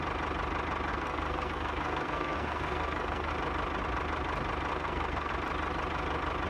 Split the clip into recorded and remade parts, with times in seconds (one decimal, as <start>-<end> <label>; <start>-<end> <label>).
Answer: 0.0-0.9 recorded; 0.9-3.3 remade; 3.3-4.7 recorded; 4.7-5.3 remade; 5.3-6.5 recorded